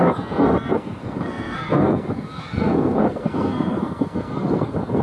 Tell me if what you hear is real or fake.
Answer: fake